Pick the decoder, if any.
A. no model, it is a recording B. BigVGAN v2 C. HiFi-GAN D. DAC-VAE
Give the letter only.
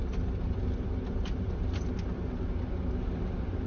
A